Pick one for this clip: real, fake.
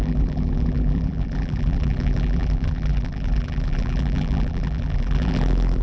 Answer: fake